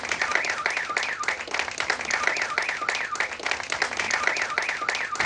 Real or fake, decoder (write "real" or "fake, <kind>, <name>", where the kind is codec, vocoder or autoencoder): real